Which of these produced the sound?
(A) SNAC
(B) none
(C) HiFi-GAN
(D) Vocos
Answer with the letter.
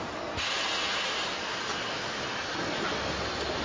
B